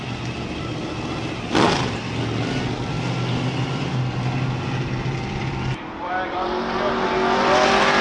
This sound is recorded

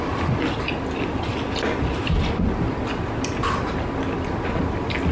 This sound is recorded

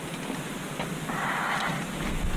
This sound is recorded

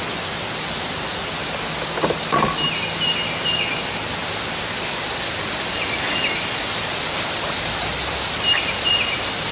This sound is recorded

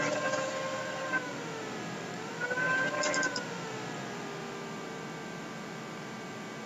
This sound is recorded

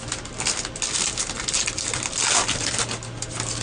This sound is recorded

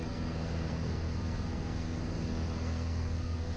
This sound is remade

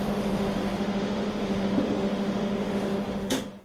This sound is remade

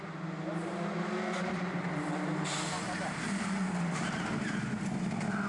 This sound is recorded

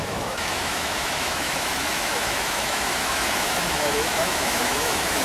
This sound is remade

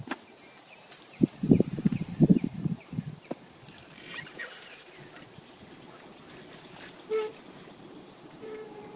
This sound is remade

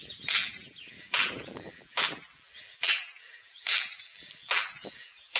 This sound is remade